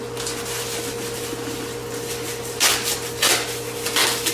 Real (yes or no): yes